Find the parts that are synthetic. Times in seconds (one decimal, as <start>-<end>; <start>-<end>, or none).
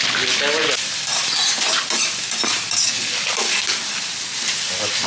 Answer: none